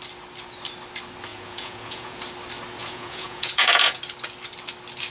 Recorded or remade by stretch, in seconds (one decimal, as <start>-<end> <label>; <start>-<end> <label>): 0.0-1.3 recorded; 1.3-2.2 remade; 2.2-2.8 recorded; 2.8-4.0 remade; 4.0-5.1 recorded